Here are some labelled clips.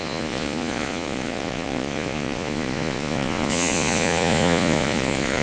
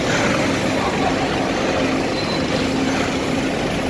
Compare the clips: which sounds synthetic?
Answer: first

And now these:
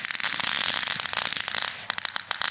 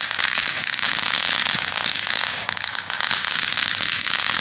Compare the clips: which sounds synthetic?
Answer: second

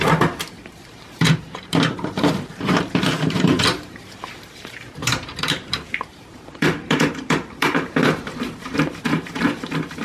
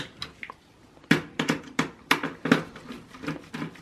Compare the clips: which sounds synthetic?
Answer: first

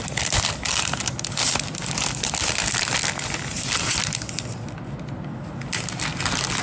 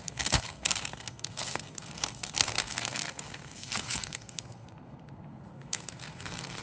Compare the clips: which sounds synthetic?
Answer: second